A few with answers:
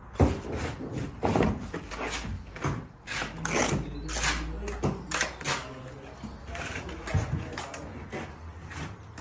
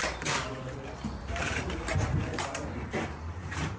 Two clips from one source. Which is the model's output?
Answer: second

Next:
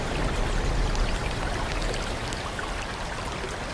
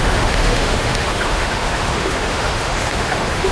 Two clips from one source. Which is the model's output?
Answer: second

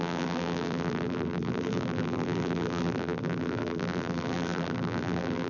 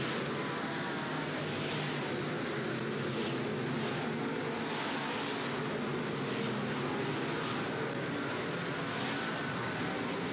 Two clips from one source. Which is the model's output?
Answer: first